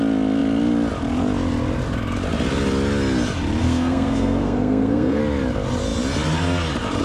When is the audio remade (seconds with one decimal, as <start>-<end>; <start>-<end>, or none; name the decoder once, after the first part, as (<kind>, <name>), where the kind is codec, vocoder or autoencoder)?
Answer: 3.6-5.2 (codec, SNAC)